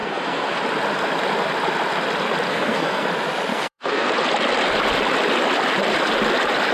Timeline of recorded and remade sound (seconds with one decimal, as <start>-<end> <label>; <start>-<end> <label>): 0.0-0.6 remade; 0.6-2.5 recorded; 2.5-3.1 remade; 3.1-3.5 recorded; 3.5-4.1 remade; 4.1-6.7 recorded